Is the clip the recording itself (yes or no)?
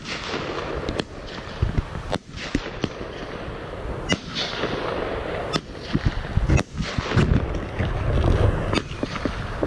yes